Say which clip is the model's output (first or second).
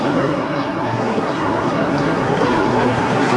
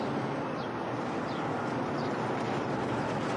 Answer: first